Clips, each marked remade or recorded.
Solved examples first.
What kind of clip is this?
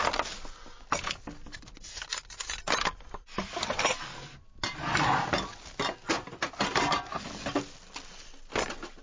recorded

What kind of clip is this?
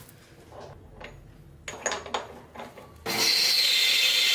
recorded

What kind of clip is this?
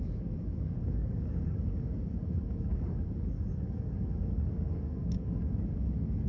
remade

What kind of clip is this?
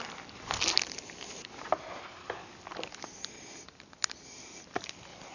recorded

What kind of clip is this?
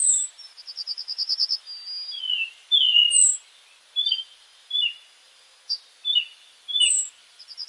recorded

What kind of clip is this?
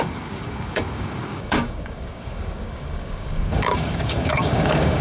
remade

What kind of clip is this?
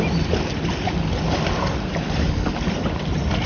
recorded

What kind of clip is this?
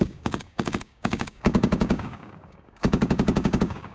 remade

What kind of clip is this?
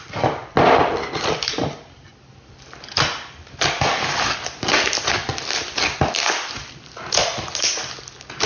recorded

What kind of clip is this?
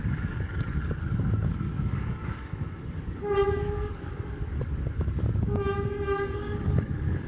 remade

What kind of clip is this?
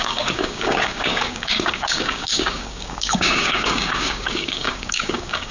remade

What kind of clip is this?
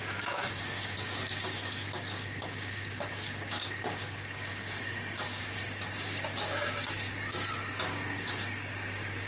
remade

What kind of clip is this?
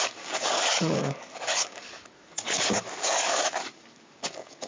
remade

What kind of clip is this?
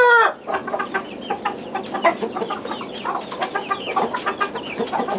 recorded